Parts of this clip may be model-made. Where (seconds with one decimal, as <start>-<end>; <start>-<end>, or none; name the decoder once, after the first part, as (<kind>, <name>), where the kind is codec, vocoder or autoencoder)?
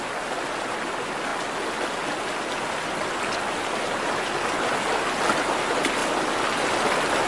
none